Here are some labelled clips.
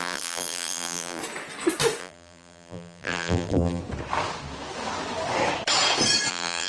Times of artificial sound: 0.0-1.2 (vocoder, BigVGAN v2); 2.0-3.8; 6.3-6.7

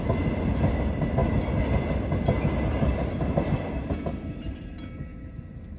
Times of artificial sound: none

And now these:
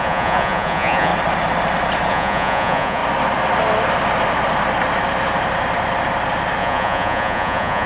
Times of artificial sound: 0.0-1.1 (vocoder, Vocos); 2.1-3.0; 6.6-7.9